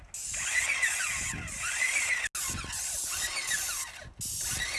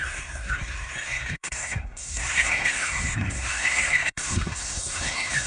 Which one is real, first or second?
first